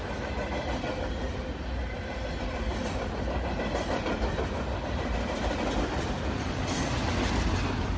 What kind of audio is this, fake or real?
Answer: real